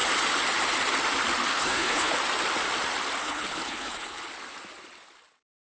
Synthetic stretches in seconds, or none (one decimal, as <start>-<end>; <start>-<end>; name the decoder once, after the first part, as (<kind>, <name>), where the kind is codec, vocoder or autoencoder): 1.5-2.1 (codec, HILCodec); 3.2-4.3